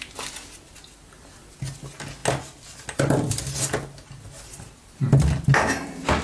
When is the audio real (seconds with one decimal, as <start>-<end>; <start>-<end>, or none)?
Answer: 0.0-6.2